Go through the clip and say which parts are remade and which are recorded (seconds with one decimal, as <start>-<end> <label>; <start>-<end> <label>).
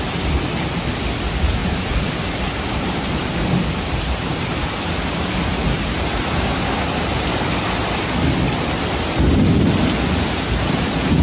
0.0-1.6 recorded; 1.6-3.4 remade; 3.4-11.2 recorded